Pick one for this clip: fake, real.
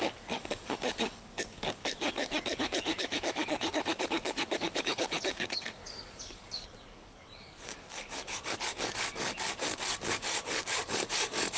fake